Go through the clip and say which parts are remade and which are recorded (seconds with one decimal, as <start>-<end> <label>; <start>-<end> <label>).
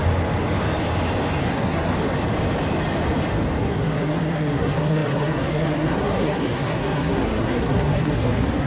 0.0-1.4 recorded; 1.4-1.9 remade; 1.9-3.6 recorded; 3.6-8.7 remade